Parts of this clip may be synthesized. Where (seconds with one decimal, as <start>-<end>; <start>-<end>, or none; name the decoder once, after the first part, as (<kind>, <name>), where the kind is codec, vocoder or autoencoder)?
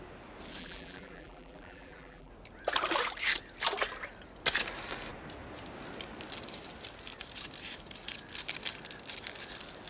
0.6-2.3 (vocoder, BigVGAN v2)